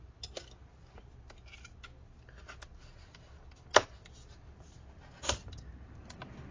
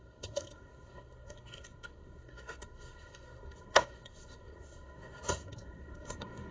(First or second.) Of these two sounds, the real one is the first